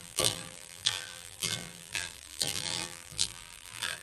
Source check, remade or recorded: remade